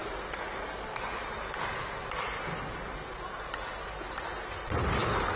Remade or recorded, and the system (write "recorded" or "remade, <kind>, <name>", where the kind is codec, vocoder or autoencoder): recorded